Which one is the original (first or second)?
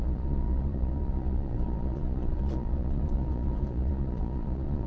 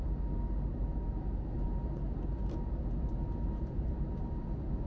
second